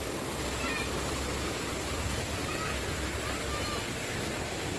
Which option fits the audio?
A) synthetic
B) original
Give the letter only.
B